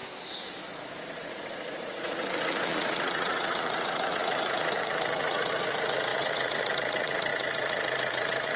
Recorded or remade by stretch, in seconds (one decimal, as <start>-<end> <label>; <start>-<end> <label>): 0.0-1.0 recorded; 1.0-8.6 remade